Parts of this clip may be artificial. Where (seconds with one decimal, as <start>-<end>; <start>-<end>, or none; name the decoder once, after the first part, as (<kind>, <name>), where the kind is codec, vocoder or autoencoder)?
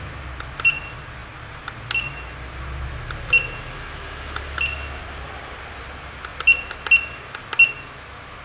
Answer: 5.0-5.7 (vocoder, BigVGAN v2)